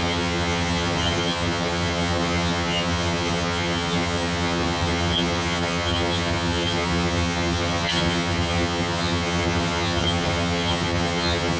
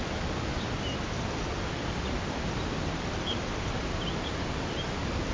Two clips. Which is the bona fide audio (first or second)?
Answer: second